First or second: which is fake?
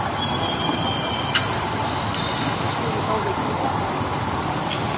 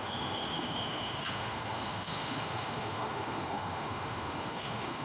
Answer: second